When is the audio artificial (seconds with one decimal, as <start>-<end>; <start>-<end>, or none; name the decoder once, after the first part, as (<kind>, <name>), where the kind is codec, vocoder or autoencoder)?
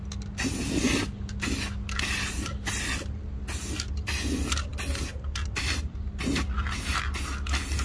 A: none